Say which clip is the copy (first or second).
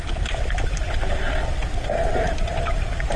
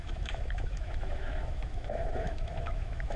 second